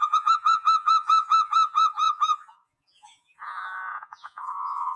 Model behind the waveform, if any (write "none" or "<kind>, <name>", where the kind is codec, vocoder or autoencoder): vocoder, Vocos